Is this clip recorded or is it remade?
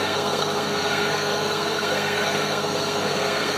remade